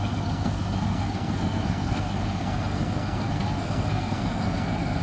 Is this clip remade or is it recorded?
remade